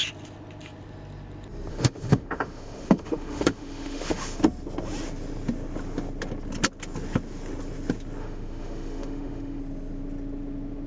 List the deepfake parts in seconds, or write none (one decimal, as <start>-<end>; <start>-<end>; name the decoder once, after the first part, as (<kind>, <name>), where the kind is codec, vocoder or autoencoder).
1.7-4.4 (autoencoder, DAC-VAE); 8.2-9.6